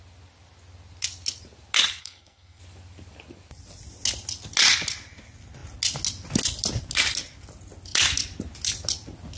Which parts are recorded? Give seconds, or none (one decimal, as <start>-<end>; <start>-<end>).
0.0-2.0; 2.6-9.4